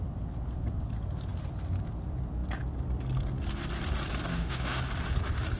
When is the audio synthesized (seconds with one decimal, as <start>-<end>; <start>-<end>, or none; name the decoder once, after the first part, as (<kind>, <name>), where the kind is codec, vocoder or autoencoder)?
4.3-4.8 (autoencoder, DAC-VAE)